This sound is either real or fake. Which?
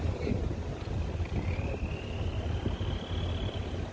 real